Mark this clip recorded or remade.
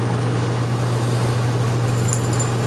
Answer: recorded